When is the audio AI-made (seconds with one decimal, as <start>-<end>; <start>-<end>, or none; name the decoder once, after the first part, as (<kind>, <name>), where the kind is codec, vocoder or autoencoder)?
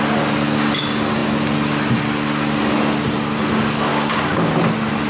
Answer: 3.9-4.5 (codec, DAC)